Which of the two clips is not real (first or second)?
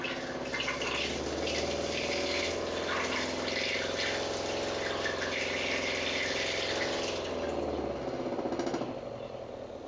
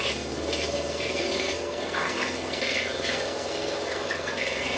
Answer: second